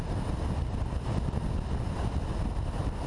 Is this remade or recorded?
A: recorded